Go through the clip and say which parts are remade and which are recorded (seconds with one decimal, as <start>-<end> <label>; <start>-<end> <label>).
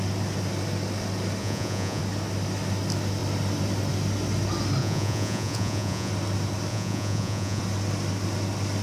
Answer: 0.0-1.4 recorded; 1.4-2.0 remade; 2.0-4.8 recorded; 4.8-6.1 remade; 6.1-6.7 recorded; 6.7-7.6 remade; 7.6-8.8 recorded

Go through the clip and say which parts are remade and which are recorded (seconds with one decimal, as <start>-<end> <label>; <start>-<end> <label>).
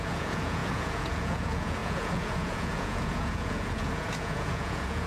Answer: 0.0-5.1 remade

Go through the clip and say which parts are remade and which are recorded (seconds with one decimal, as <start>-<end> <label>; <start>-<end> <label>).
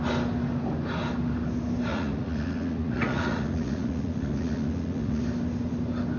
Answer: 0.0-1.9 recorded; 1.9-5.2 remade; 5.2-6.2 recorded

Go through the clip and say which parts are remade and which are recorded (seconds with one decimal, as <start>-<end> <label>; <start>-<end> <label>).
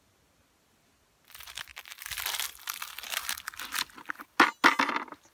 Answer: 0.0-5.3 recorded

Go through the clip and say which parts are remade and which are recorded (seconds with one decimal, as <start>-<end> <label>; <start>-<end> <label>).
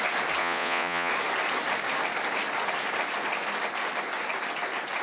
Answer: 0.0-0.4 recorded; 0.4-1.1 remade; 1.1-5.0 recorded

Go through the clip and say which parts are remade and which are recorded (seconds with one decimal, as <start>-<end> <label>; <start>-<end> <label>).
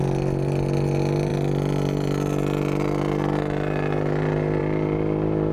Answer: 0.0-5.5 recorded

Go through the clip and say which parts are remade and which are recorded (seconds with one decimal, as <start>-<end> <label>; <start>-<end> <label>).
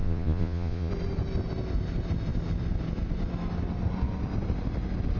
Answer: 0.0-0.9 remade; 0.9-5.2 recorded